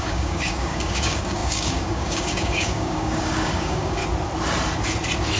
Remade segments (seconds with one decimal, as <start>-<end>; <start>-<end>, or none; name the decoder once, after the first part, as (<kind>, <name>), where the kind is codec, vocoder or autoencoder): 0.0-4.0 (codec, DAC)